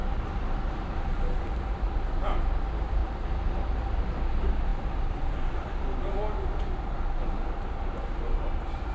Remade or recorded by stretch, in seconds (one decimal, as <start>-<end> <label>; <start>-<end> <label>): 0.0-2.5 remade; 2.5-4.7 recorded; 4.7-5.5 remade; 5.5-8.9 recorded